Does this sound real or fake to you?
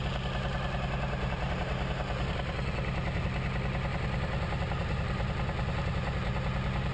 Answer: real